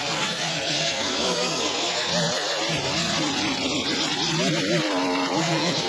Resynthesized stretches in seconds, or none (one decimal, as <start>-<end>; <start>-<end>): 0.0-2.1; 5.4-5.9